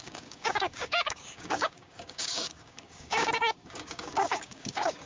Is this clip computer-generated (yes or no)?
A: yes